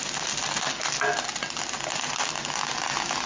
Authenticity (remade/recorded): recorded